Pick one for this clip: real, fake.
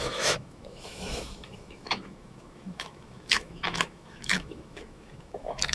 fake